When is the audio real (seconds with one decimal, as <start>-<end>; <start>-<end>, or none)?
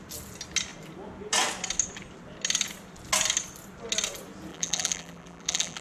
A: 0.0-4.5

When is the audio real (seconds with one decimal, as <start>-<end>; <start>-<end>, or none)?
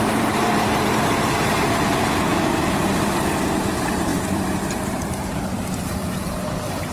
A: none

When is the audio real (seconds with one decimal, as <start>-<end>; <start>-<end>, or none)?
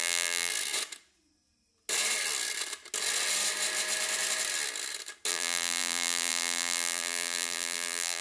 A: 0.5-5.3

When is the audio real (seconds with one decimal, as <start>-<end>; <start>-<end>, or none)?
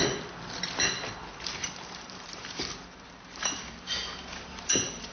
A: 0.0-1.6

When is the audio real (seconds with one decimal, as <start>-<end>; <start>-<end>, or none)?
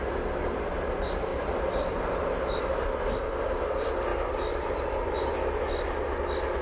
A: 0.0-1.3; 2.6-4.1; 5.2-6.6